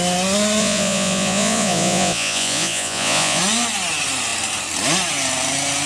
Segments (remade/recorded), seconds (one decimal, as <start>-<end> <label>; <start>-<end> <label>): 0.0-0.6 recorded; 0.6-3.4 remade; 3.4-5.9 recorded